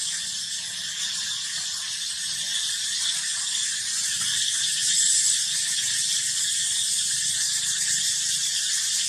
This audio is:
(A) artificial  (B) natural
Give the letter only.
B